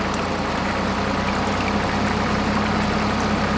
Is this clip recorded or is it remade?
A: recorded